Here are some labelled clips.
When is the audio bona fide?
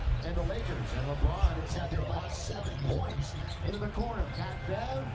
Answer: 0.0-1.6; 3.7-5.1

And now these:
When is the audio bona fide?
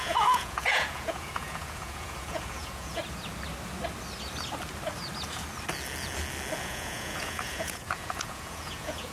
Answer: 3.0-6.6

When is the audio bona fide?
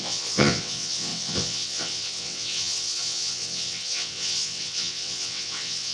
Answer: none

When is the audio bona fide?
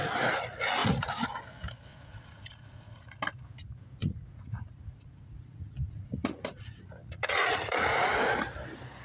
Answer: 0.0-0.8; 1.4-1.9; 3.1-4.0; 8.1-9.0